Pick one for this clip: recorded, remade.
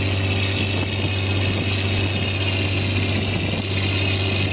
recorded